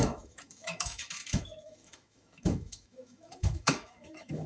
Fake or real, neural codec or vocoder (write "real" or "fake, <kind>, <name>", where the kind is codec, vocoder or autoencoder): fake, autoencoder, DAC-VAE